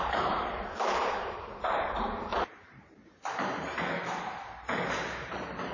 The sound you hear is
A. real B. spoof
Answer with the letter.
B